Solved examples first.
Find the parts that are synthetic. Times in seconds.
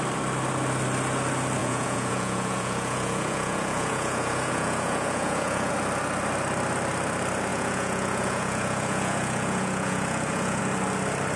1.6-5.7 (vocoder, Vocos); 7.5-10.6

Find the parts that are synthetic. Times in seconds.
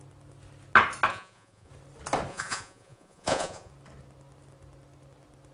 1.1-1.7 (vocoder, Vocos); 2.3-3.7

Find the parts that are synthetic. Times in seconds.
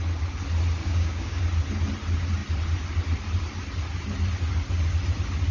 0.8-1.4 (codec, DAC)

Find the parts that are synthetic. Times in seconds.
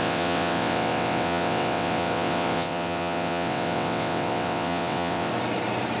0.0-5.3 (vocoder, WaveNeXt)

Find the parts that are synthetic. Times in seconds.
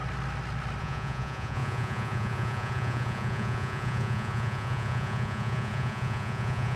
0.8-6.8 (vocoder, Vocos)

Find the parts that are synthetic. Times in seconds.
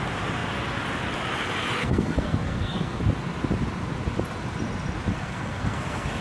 1.8-3.0 (codec, SNAC); 5.1-6.2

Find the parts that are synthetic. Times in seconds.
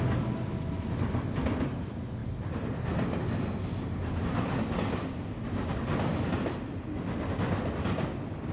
none